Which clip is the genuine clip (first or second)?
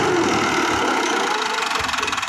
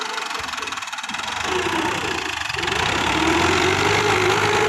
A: first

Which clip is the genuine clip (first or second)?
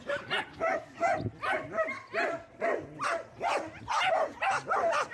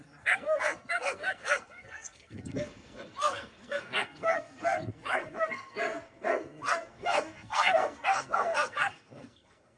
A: first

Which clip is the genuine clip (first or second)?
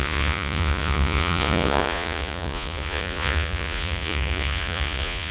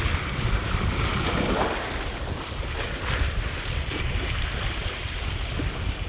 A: second